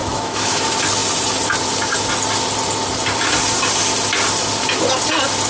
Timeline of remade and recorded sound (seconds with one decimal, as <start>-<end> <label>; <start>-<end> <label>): 0.0-0.6 remade; 0.6-5.5 recorded